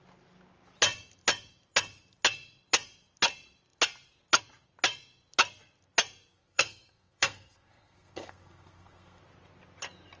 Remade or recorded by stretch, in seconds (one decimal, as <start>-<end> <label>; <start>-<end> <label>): 0.0-6.3 recorded; 6.3-9.2 remade; 9.2-10.2 recorded